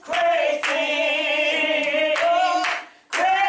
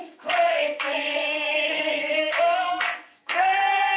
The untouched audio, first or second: first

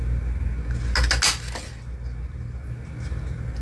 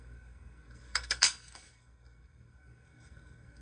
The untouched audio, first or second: first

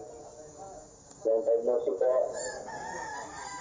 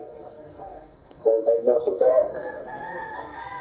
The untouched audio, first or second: first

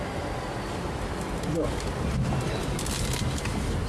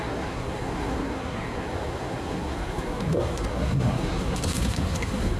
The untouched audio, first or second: first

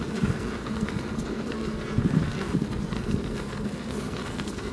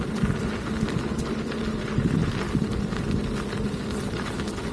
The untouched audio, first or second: second